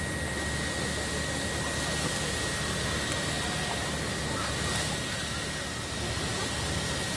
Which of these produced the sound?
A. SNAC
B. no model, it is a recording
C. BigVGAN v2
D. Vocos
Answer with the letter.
B